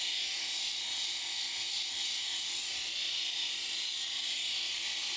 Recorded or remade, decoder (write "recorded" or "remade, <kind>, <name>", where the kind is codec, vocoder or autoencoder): recorded